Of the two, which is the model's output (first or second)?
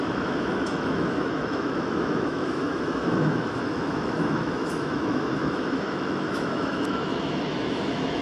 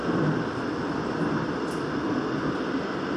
first